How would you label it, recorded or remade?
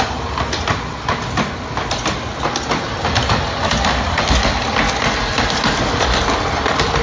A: recorded